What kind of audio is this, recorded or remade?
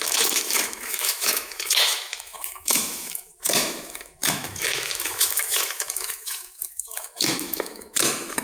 remade